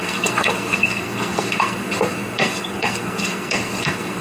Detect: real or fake fake